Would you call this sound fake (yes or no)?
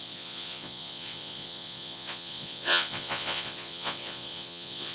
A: yes